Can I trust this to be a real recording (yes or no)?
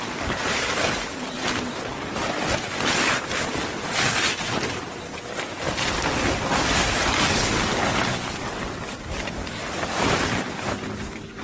yes